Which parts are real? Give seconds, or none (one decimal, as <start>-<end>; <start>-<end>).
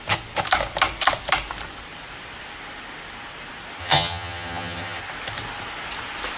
0.0-3.8; 5.0-6.4